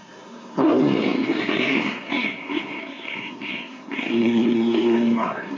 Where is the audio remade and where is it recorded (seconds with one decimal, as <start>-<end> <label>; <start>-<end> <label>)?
0.0-5.6 remade

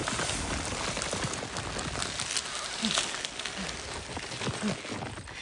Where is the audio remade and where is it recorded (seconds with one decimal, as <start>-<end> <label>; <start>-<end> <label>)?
0.0-5.4 recorded

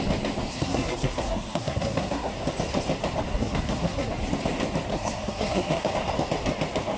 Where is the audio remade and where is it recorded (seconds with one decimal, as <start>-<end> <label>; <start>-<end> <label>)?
0.0-0.5 recorded; 0.5-2.3 remade; 2.3-3.3 recorded; 3.3-4.1 remade; 4.1-4.9 recorded; 4.9-5.9 remade; 5.9-7.0 recorded

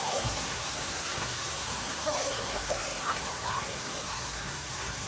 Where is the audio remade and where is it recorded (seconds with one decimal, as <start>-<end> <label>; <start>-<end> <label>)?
0.0-5.1 remade

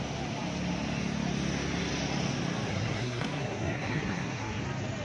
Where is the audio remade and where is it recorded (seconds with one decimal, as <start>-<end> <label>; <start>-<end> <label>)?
0.0-2.7 recorded; 2.7-4.6 remade; 4.6-5.0 recorded

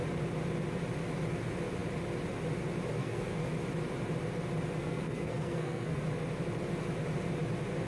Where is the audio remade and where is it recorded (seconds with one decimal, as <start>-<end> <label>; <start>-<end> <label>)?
0.0-3.0 recorded; 3.0-3.5 remade; 3.5-4.8 recorded; 4.8-6.0 remade; 6.0-7.9 recorded

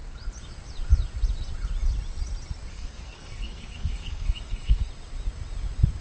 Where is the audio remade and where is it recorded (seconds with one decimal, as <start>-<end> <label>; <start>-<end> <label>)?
0.0-2.7 recorded; 2.7-4.9 remade; 4.9-6.0 recorded

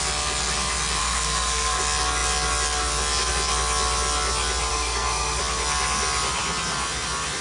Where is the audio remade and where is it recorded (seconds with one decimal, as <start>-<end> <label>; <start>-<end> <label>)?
0.0-1.0 recorded; 1.0-1.8 remade; 1.8-4.7 recorded; 4.7-5.4 remade; 5.4-7.4 recorded